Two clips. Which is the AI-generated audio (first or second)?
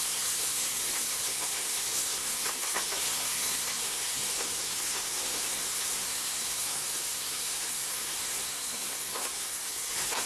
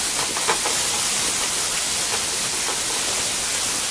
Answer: first